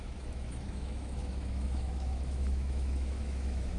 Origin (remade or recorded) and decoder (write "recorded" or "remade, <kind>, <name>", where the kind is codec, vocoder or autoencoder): remade, autoencoder, DAC-VAE